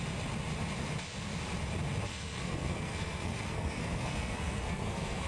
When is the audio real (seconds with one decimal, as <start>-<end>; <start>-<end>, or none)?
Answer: 0.0-2.1